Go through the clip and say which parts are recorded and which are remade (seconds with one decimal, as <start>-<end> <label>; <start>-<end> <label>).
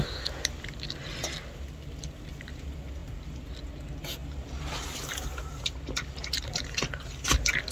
0.0-7.7 recorded